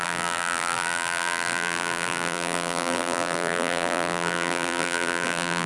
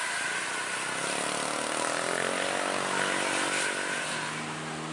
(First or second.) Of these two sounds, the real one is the second